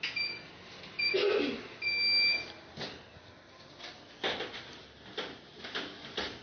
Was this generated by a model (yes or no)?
no